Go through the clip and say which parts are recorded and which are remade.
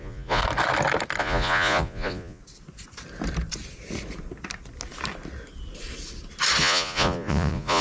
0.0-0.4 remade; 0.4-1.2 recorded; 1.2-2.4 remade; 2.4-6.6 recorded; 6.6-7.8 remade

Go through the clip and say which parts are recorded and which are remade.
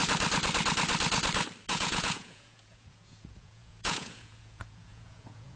0.0-1.7 recorded; 1.7-5.6 remade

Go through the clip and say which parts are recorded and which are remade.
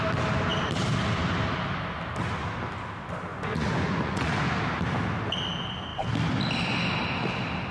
0.0-3.3 recorded; 3.3-4.4 remade; 4.4-7.7 recorded